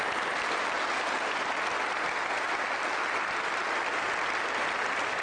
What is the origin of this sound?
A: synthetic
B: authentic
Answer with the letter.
B